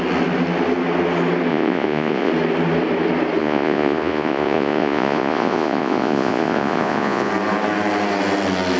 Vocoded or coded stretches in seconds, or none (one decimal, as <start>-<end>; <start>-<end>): 1.5-2.3; 3.4-7.3